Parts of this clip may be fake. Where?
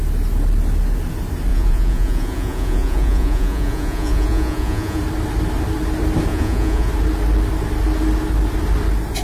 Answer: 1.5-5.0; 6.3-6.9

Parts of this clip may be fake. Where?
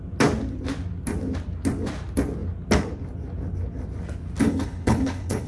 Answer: 4.4-5.5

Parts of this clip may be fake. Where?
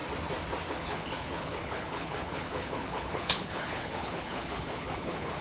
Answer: 0.7-5.4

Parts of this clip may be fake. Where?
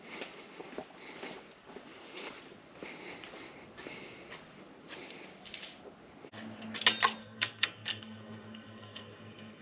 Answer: 7.2-9.6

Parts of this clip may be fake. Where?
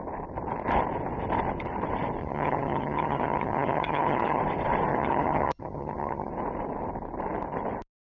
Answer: 2.2-4.4; 4.9-6.3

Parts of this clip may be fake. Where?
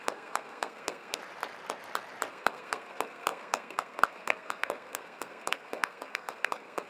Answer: 0.0-1.2; 2.3-6.9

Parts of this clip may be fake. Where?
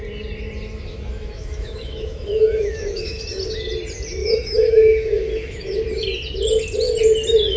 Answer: 0.9-3.2; 4.2-5.8